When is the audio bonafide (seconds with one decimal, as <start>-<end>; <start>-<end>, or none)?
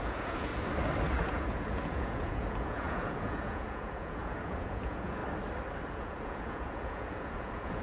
0.5-1.2; 5.2-5.8